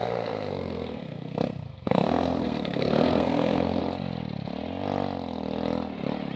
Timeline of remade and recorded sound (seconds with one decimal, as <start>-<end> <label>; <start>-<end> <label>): 0.0-3.8 remade; 3.8-6.4 recorded